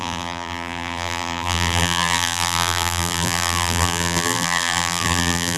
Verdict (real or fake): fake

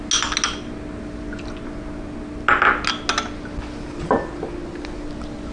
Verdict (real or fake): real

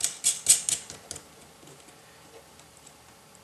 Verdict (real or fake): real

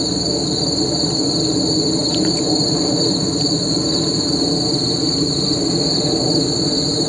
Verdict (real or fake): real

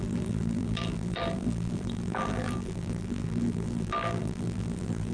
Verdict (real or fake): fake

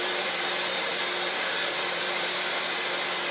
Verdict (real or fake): fake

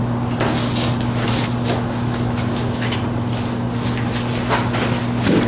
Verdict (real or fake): real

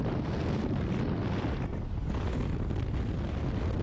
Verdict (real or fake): real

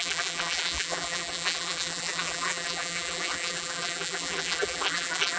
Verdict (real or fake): fake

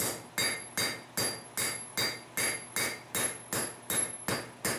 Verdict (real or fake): real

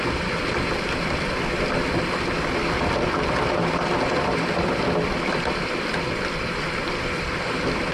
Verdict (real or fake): real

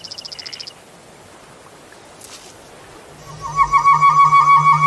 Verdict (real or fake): real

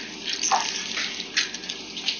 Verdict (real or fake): fake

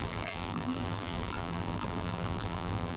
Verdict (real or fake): fake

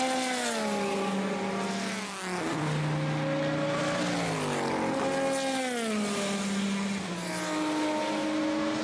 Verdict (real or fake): real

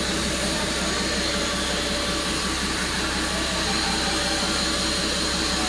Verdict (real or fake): real